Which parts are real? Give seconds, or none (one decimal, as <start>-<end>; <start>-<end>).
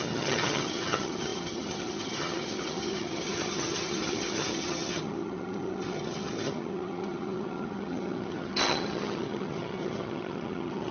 none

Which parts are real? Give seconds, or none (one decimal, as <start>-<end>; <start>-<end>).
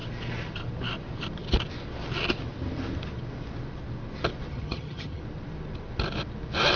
0.0-4.5; 5.2-6.8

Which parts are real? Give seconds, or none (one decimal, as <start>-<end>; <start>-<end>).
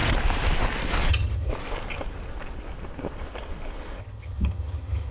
0.0-1.1; 1.5-4.0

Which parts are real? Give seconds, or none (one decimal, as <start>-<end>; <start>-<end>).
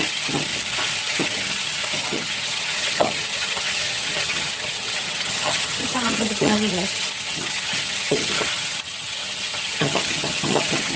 0.5-1.0